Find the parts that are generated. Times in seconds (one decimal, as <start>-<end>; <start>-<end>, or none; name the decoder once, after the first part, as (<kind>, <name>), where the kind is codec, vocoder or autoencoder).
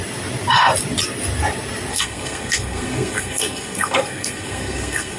1.9-5.2 (codec, SNAC)